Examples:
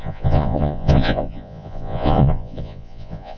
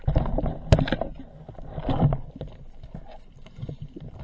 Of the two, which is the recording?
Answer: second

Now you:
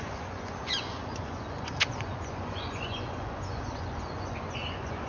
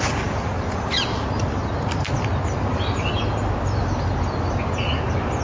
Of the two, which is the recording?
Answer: second